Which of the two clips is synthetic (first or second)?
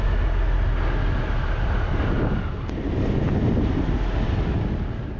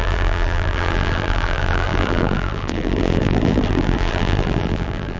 second